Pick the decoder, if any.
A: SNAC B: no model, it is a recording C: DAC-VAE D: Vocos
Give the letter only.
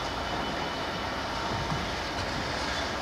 B